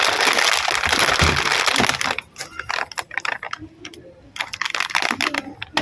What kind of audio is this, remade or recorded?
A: recorded